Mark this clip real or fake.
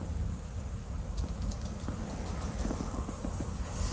real